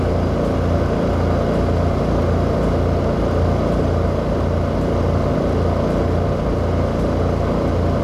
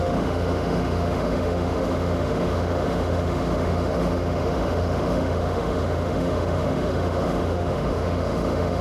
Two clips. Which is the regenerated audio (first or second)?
second